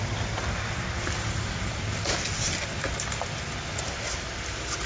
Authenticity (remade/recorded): recorded